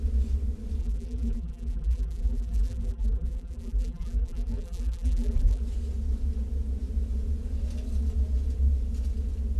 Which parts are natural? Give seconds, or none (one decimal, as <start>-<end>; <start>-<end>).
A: 0.0-0.8; 5.6-9.6